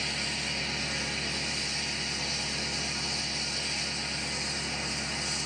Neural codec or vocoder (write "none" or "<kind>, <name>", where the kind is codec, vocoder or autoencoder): none